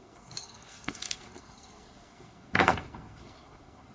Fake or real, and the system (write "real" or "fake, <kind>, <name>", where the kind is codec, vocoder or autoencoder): fake, codec, SNAC